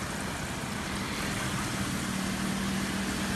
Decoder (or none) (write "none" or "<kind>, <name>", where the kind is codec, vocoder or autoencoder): none